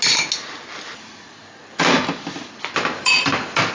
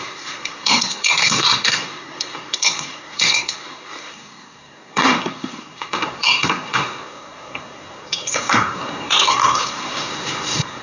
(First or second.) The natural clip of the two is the first